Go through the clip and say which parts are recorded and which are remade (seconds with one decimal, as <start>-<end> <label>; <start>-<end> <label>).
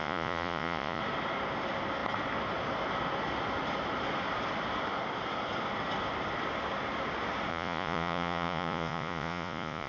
0.0-1.0 remade; 1.0-7.5 recorded; 7.5-9.9 remade